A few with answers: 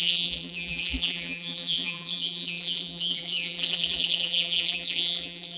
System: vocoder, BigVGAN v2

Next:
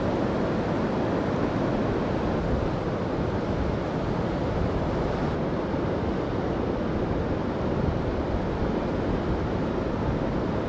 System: none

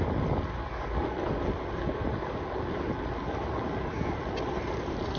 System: none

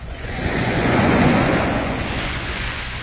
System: vocoder, Vocos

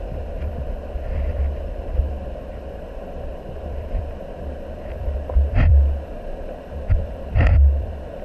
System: vocoder, BigVGAN v2